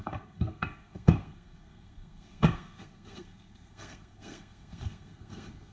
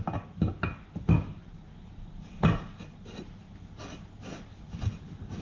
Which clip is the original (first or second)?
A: second